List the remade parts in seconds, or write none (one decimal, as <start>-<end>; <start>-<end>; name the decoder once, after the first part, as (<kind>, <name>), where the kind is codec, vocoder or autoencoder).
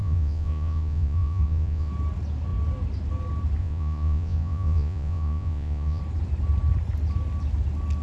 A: 0.0-1.9 (vocoder, Vocos); 3.6-6.0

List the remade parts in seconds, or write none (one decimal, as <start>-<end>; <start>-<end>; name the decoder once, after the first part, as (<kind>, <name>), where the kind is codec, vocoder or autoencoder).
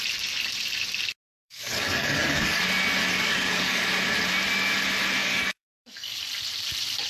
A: 1.3-2.6 (codec, DAC); 3.1-3.9; 5.2-6.2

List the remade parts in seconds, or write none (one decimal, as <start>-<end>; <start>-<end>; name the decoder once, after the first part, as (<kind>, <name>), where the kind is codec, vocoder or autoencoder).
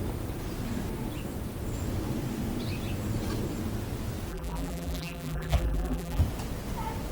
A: 4.3-6.2 (vocoder, BigVGAN v2)